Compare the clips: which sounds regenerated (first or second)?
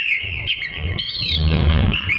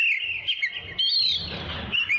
first